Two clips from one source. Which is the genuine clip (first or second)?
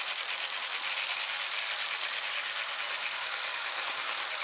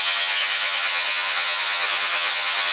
first